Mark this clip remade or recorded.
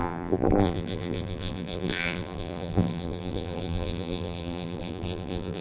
remade